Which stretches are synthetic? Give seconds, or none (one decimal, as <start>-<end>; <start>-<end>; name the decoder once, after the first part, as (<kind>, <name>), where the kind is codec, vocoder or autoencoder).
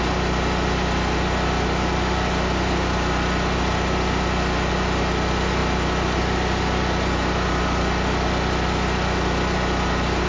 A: none